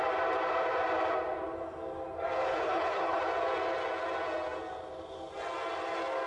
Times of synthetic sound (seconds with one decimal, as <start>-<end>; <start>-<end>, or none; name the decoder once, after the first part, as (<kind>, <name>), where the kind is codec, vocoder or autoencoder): 2.5-3.2 (codec, HILCodec)